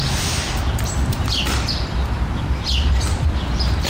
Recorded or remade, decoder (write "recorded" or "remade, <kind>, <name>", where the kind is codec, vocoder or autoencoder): remade, vocoder, BigVGAN v2